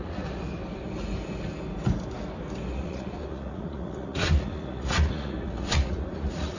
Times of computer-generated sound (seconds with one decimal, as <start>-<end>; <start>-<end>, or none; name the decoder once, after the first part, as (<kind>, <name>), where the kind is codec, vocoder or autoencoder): 0.0-0.5 (vocoder, Vocos); 2.7-6.6